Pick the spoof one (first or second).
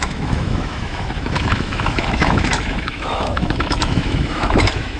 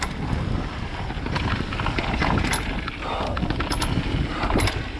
first